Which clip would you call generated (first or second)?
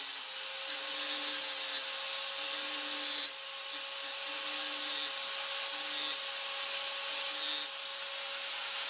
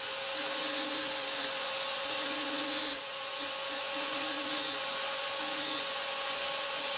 second